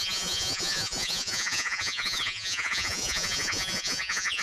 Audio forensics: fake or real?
fake